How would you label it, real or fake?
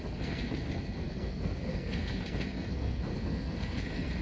fake